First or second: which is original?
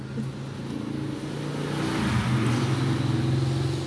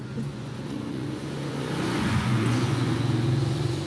first